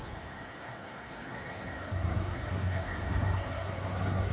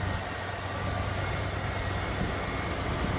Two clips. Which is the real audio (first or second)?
second